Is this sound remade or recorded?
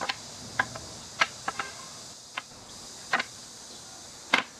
recorded